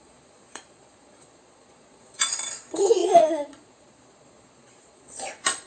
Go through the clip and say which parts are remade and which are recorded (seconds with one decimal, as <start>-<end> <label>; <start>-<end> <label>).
0.0-5.7 remade